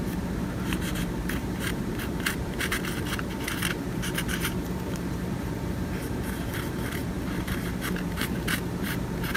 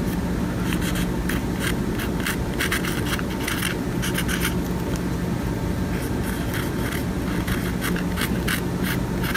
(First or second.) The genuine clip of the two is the second